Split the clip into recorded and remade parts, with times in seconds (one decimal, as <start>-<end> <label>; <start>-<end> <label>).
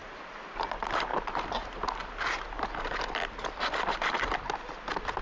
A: 0.0-0.7 remade; 0.7-1.1 recorded; 1.1-4.2 remade; 4.2-5.2 recorded